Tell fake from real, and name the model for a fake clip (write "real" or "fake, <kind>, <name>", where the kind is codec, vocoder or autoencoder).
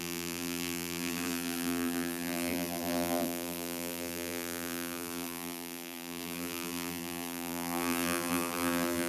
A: fake, vocoder, BigVGAN v2